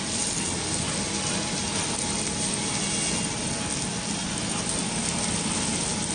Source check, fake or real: real